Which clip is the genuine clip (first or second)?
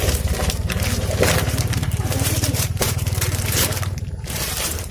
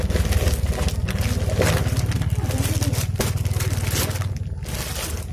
second